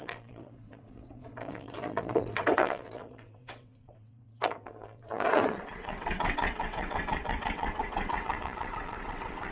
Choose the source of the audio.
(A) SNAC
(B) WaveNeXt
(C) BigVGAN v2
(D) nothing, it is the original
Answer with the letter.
B